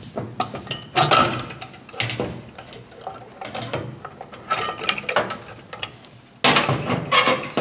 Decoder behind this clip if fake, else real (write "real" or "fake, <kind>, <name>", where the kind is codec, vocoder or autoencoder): real